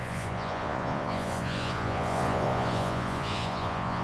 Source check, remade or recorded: remade